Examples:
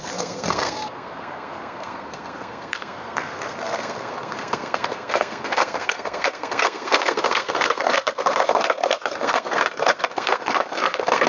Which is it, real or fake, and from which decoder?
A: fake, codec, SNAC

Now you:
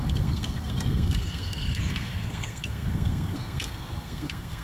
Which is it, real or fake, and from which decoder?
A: fake, codec, SNAC